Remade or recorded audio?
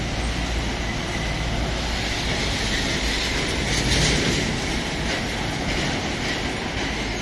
recorded